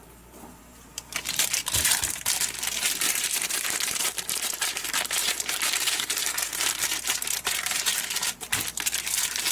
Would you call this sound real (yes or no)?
no